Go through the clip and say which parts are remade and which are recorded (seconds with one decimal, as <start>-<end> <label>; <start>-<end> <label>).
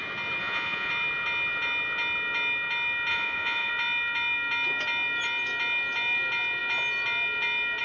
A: 0.0-0.4 recorded; 0.4-0.9 remade; 0.9-3.1 recorded; 3.1-3.7 remade; 3.7-7.8 recorded